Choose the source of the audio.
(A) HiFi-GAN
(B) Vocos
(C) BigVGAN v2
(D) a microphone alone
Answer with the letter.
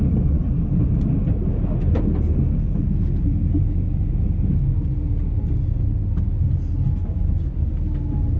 D